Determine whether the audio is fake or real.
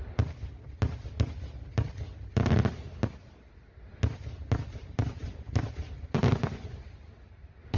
real